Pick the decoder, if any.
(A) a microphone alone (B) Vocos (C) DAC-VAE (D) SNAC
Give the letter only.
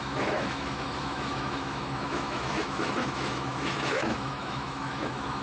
C